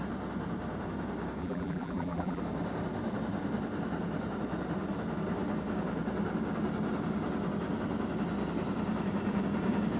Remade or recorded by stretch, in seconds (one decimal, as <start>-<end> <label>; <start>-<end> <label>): 0.0-1.4 recorded; 1.4-2.4 remade; 2.4-10.0 recorded